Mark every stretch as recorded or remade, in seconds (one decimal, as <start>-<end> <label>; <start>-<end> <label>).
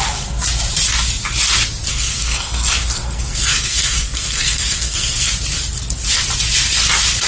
0.0-1.9 recorded; 1.9-5.3 remade; 5.3-7.3 recorded